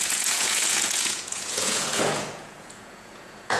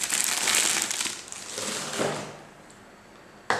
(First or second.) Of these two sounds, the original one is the second